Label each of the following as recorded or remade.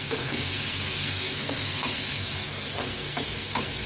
remade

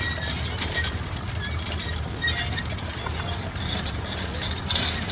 recorded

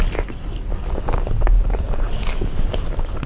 recorded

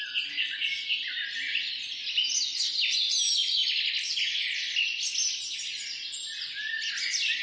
recorded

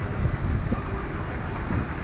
recorded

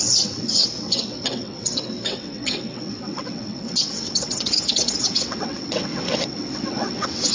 remade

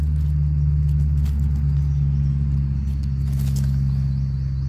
recorded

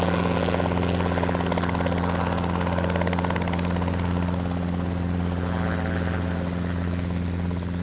recorded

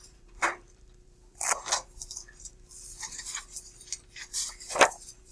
remade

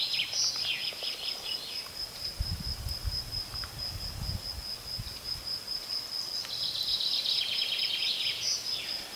recorded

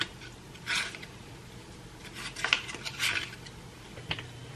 recorded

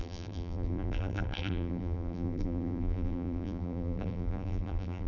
remade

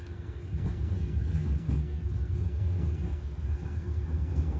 remade